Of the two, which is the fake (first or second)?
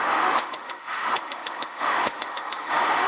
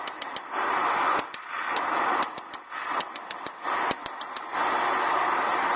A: first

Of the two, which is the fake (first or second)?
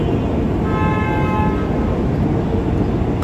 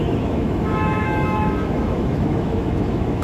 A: second